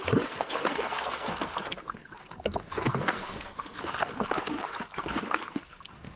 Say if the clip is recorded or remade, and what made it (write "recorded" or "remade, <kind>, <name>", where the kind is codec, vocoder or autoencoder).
remade, codec, SNAC